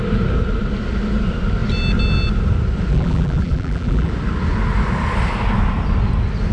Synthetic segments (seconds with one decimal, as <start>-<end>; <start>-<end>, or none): 2.9-4.1